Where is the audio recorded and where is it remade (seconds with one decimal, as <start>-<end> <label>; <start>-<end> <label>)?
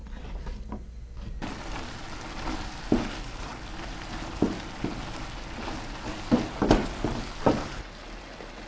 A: 0.0-8.7 recorded